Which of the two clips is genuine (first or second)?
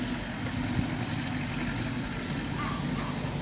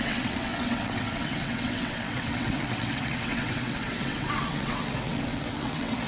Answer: first